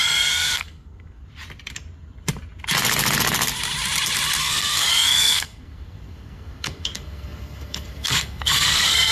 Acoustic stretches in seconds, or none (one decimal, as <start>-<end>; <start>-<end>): 1.2-4.4